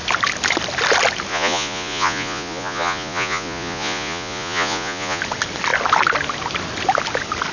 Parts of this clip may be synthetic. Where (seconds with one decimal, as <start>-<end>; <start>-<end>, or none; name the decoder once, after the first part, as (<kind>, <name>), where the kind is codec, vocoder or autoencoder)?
1.3-5.2 (vocoder, Vocos)